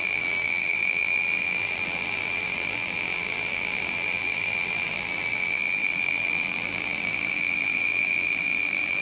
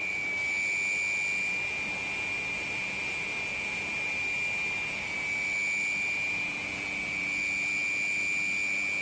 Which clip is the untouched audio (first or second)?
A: second